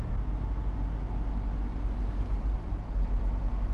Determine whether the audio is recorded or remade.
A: recorded